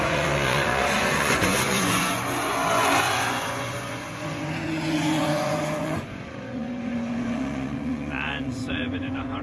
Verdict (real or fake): fake